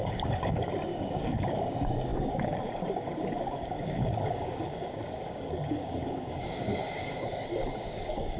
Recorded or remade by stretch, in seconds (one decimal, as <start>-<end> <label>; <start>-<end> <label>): 0.0-8.4 remade